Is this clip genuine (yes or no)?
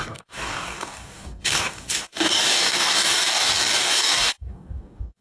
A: no